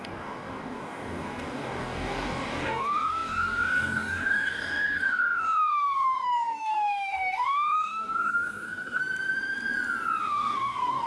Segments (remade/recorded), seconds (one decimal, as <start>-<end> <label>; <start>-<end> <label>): 0.0-9.0 remade; 9.0-10.2 recorded; 10.2-11.1 remade